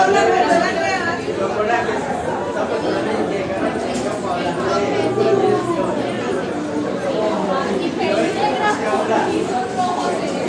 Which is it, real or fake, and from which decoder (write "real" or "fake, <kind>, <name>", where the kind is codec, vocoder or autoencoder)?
real